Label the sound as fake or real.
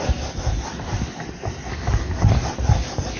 real